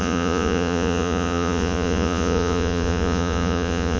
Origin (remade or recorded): remade